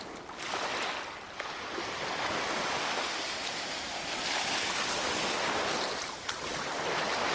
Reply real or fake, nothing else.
real